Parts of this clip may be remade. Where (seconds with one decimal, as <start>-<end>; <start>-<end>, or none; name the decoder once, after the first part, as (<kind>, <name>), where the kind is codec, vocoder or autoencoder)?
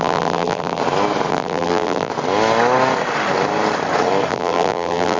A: 0.0-0.8 (vocoder, BigVGAN v2); 1.3-2.1; 4.3-5.2